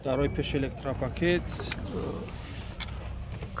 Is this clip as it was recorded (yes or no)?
yes